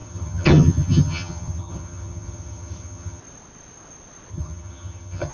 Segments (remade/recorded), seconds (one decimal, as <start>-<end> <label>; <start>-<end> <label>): 0.0-3.2 remade; 3.2-4.3 recorded; 4.3-5.3 remade